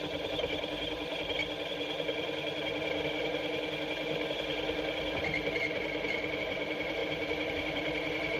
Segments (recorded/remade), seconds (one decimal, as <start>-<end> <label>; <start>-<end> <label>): 0.0-1.4 remade; 1.4-6.4 recorded; 6.4-7.0 remade; 7.0-7.5 recorded; 7.5-8.4 remade

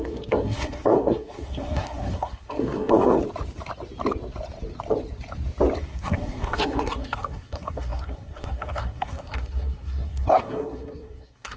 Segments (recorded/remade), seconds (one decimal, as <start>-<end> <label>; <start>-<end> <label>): 0.0-3.2 remade; 3.2-5.8 recorded; 5.8-11.6 remade